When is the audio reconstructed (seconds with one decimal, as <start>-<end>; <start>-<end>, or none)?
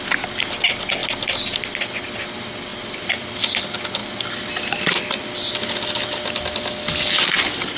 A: 2.7-3.3; 4.0-5.5